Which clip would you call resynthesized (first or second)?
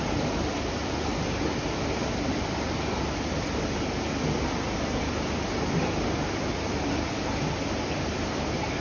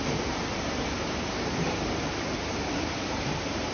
second